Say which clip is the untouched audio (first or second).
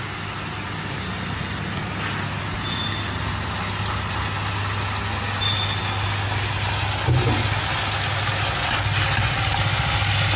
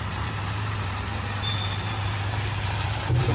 first